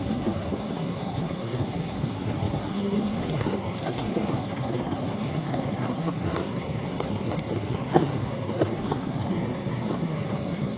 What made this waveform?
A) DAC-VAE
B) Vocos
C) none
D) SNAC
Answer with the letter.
D